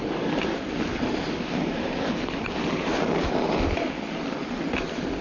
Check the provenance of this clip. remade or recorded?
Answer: recorded